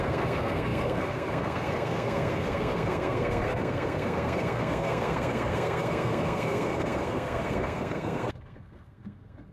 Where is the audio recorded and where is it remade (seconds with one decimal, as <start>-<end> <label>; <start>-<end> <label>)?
0.0-9.5 remade